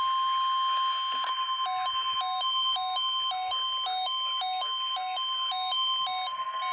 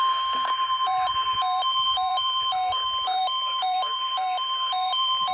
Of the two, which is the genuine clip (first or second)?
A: first